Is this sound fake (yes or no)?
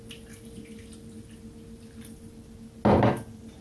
no